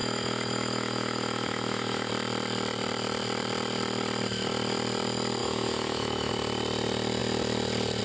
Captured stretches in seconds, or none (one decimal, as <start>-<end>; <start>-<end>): 2.1-5.4; 6.3-8.0